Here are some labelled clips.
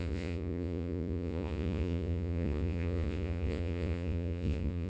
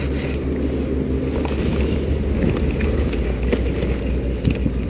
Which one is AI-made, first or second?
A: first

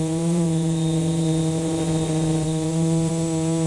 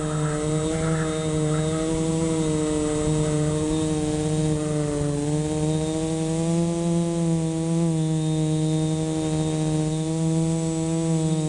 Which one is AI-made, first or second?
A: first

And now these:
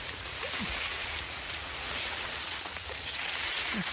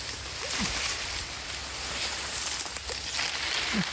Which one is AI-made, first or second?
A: first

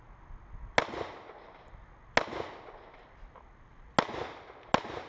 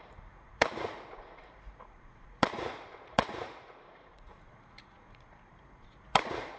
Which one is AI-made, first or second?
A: second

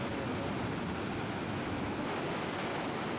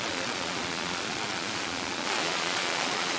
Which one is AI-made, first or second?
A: second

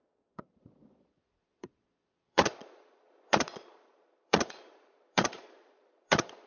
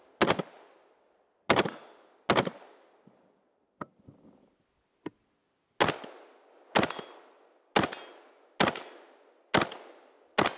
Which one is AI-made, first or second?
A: first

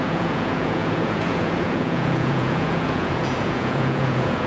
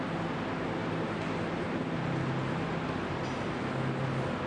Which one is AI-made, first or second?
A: first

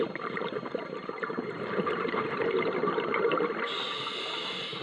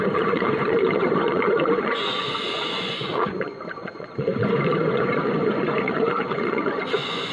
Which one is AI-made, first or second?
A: second